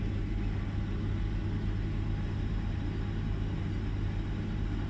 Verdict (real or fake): real